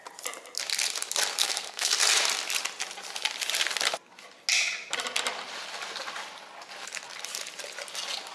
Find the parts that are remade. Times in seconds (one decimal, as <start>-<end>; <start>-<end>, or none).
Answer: 1.3-1.9